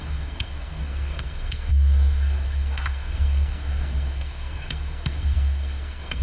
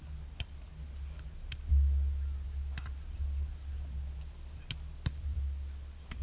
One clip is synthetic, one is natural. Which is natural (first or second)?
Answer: second